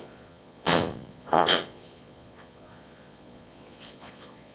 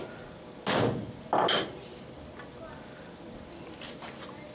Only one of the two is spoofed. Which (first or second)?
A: first